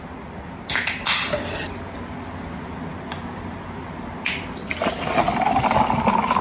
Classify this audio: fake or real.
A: real